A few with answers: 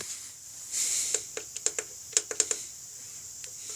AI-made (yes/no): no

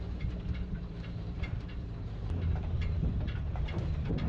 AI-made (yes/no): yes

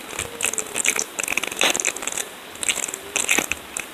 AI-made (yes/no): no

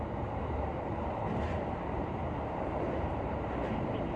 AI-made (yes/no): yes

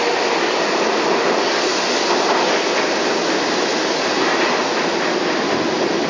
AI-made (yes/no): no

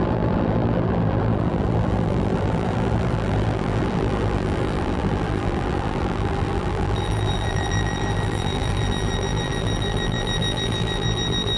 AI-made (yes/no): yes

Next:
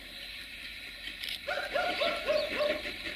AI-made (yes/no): yes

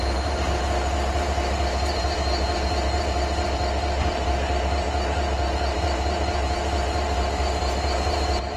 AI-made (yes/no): yes